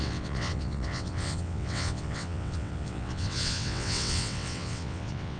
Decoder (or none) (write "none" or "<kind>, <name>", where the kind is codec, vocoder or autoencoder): vocoder, WaveNeXt